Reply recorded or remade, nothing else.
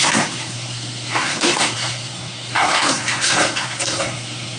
remade